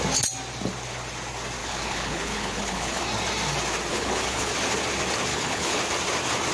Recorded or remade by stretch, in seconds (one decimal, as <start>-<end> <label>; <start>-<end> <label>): 0.0-1.6 recorded; 1.6-3.0 remade; 3.0-3.9 recorded; 3.9-4.5 remade; 4.5-5.3 recorded; 5.3-5.8 remade; 5.8-6.5 recorded